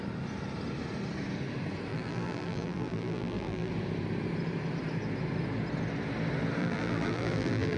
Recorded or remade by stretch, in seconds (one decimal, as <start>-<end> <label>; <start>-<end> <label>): 0.0-1.9 recorded; 1.9-3.7 remade; 3.7-6.6 recorded; 6.6-7.8 remade